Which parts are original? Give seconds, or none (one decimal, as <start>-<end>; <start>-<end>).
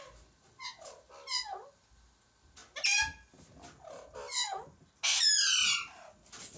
0.0-6.6